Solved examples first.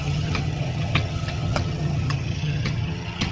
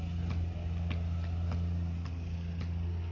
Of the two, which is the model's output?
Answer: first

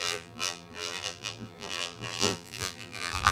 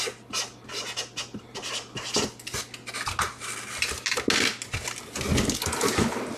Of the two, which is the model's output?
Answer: first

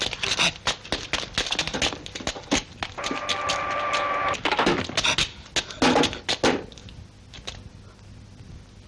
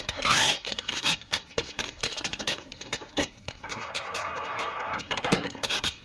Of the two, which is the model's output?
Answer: second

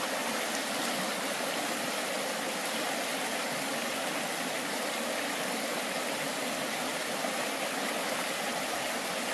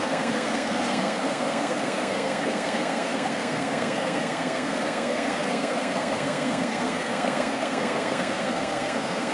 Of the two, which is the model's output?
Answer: second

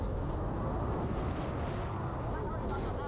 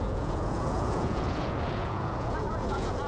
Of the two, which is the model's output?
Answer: second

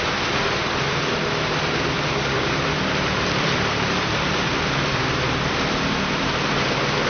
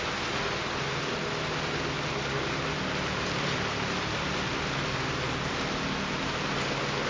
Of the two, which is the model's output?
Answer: first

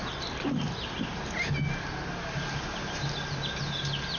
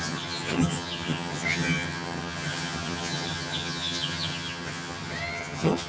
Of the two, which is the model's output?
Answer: second